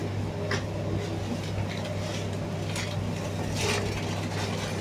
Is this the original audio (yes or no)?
yes